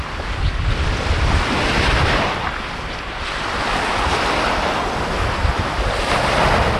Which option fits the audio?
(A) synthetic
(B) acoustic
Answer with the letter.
B